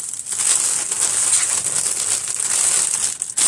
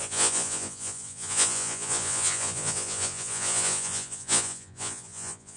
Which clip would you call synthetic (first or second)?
second